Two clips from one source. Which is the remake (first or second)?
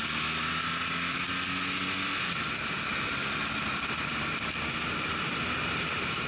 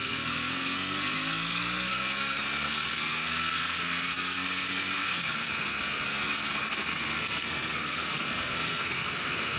second